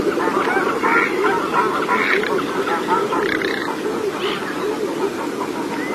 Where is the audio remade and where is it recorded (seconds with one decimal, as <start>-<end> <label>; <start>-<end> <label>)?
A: 0.0-5.9 recorded